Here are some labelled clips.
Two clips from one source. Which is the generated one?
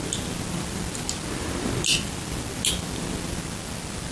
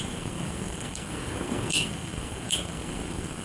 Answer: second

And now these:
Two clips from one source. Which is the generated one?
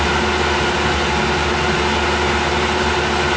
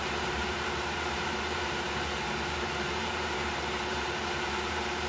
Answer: second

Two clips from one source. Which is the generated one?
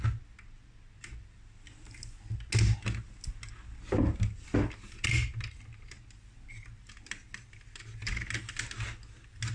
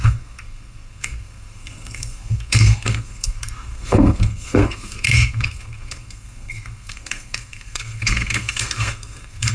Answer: second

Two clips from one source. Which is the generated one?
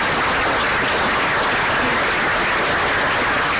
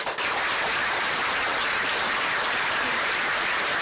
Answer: second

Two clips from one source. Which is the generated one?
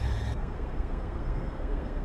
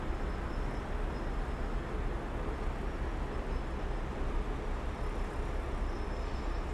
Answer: first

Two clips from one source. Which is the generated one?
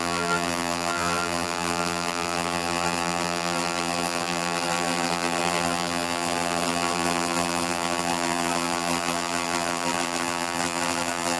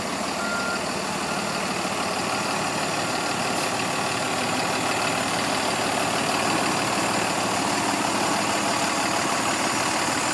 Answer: first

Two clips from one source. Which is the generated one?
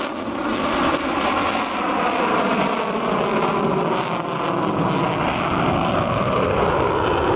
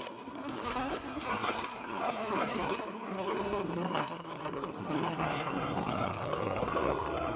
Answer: second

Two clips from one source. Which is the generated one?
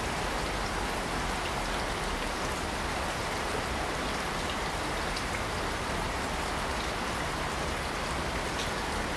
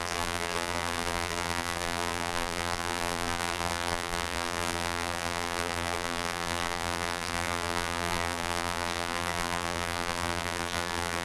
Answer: second